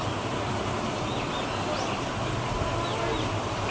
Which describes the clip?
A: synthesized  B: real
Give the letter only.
B